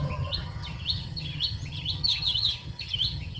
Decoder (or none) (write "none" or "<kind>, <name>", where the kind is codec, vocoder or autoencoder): vocoder, HiFi-GAN